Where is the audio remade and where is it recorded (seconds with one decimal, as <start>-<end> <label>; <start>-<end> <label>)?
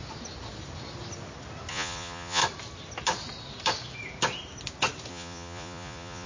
0.0-1.7 recorded; 1.7-2.4 remade; 2.4-5.1 recorded; 5.1-6.3 remade